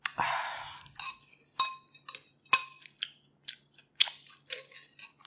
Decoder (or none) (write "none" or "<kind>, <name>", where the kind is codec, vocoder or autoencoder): none